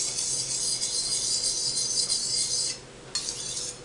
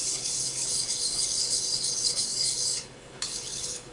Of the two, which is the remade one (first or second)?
second